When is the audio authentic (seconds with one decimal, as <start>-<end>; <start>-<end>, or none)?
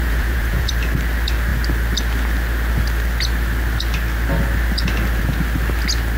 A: 0.7-6.2